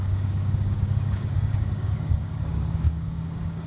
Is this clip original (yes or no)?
no